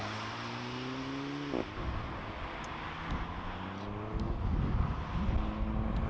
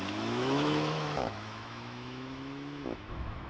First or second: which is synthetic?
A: second